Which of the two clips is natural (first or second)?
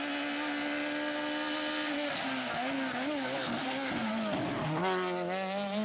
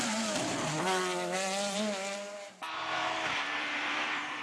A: first